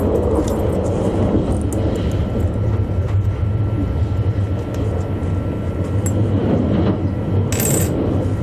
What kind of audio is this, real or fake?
real